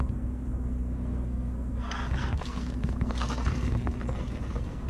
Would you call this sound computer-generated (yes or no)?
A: yes